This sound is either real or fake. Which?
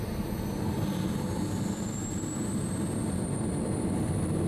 real